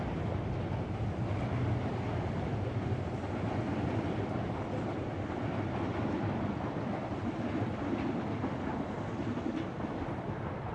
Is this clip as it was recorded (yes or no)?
yes